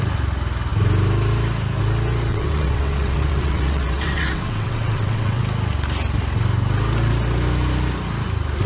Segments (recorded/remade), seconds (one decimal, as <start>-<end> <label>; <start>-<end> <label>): 0.0-2.3 recorded; 2.3-5.4 remade; 5.4-8.7 recorded